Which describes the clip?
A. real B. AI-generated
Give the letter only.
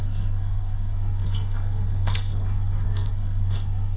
B